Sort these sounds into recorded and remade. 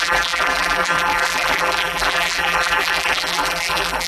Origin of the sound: remade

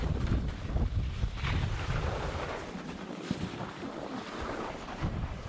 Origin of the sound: remade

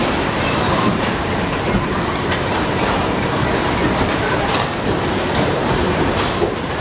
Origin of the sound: remade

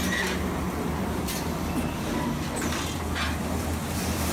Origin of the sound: recorded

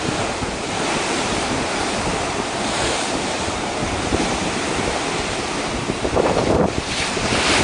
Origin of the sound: remade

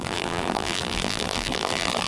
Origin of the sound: remade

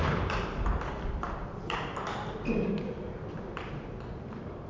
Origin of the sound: remade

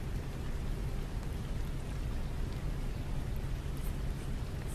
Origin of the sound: recorded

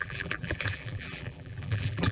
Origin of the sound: remade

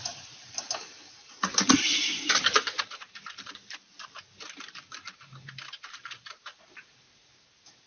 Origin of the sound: remade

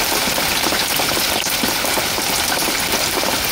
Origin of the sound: remade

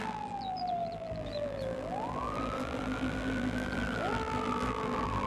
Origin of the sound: remade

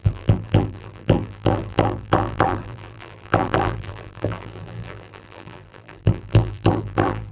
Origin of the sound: remade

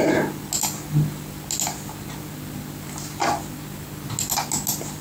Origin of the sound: recorded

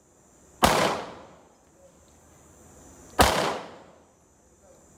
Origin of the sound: recorded